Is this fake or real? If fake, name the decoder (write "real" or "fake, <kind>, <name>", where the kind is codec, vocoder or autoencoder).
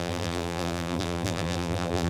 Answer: fake, vocoder, BigVGAN v2